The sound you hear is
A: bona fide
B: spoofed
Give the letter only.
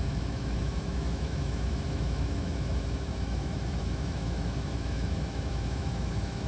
B